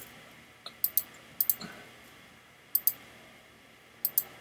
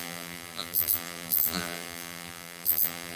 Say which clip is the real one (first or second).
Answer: first